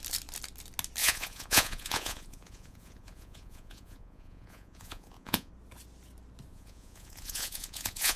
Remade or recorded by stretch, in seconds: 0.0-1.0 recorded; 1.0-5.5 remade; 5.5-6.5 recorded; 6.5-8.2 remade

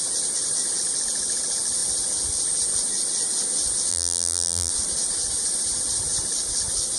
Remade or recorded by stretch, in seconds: 0.0-3.9 recorded; 3.9-4.7 remade; 4.7-7.0 recorded

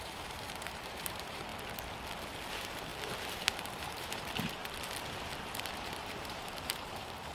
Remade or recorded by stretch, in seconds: 0.0-1.5 remade; 1.5-2.5 recorded; 2.5-2.9 remade; 2.9-3.5 recorded; 3.5-4.6 remade; 4.6-5.7 recorded; 5.7-7.3 remade

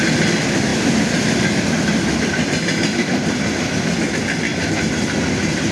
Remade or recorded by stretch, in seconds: 0.0-5.7 recorded

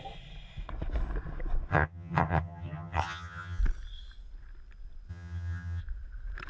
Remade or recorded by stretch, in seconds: 0.0-1.7 recorded; 1.7-3.6 remade; 3.6-5.1 recorded; 5.1-5.8 remade; 5.8-6.5 recorded

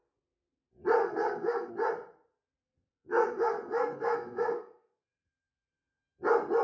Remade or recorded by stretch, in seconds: 0.0-1.0 recorded; 1.0-1.7 remade; 1.7-2.6 recorded; 2.6-6.0 remade; 6.0-6.6 recorded

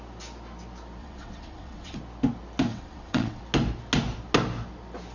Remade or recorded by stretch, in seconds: 0.0-1.0 recorded; 1.0-2.0 remade; 2.0-2.7 recorded; 2.7-3.4 remade; 3.4-5.1 recorded